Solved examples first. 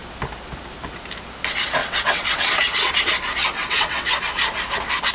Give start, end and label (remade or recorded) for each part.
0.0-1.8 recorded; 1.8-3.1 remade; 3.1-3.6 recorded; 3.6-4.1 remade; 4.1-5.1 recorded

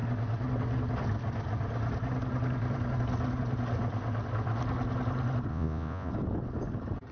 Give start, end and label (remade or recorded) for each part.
0.0-5.5 recorded; 5.5-6.1 remade; 6.1-7.1 recorded

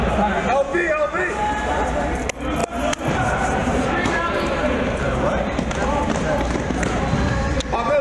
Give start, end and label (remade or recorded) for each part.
0.0-0.7 recorded; 0.7-1.3 remade; 1.3-3.6 recorded; 3.6-5.6 remade; 5.6-8.0 recorded

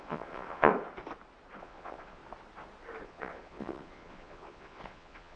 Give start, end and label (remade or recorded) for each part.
0.0-0.7 remade; 0.7-1.6 recorded; 1.6-2.2 remade; 2.2-3.0 recorded; 3.0-5.4 remade

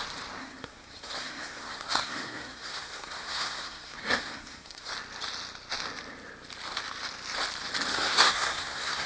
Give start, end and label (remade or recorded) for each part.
0.0-0.4 recorded; 0.4-4.9 remade; 4.9-7.9 recorded; 7.9-9.1 remade